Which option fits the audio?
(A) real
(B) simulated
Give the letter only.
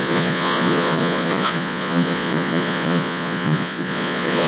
B